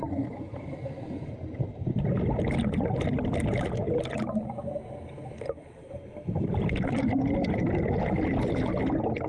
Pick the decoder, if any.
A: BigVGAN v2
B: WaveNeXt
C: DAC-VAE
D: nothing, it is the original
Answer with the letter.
D